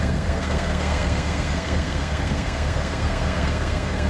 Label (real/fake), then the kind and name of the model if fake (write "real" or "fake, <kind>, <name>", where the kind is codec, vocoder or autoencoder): fake, codec, SNAC